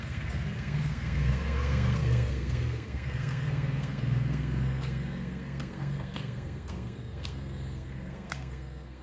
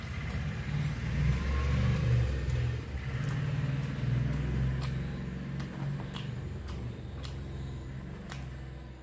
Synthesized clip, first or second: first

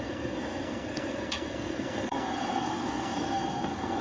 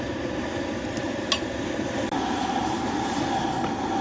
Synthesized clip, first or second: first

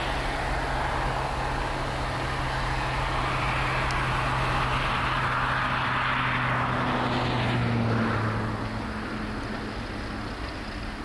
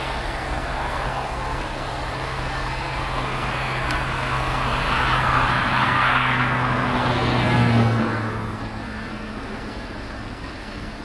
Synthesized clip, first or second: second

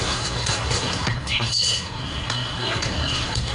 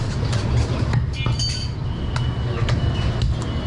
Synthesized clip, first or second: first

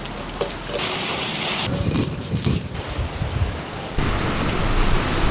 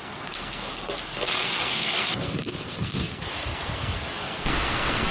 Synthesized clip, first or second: second